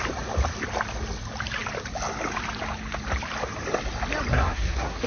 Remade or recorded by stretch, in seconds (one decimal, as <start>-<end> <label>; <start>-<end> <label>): 0.0-4.3 recorded; 4.3-5.1 remade